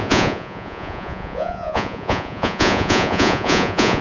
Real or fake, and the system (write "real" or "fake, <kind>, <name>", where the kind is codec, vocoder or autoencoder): fake, vocoder, Vocos